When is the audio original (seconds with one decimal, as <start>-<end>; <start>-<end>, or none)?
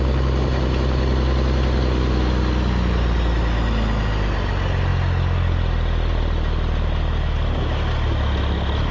0.0-8.9